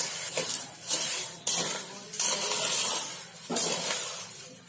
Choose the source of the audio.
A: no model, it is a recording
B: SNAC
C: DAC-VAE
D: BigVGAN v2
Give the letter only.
D